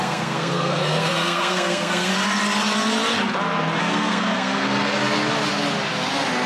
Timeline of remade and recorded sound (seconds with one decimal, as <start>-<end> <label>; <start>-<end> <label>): 0.0-2.1 remade; 2.1-3.8 recorded; 3.8-5.0 remade; 5.0-6.5 recorded